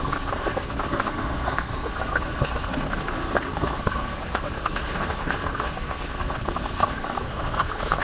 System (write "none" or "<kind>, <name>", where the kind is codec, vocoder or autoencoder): codec, SNAC